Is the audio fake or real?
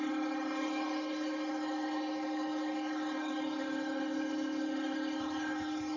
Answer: fake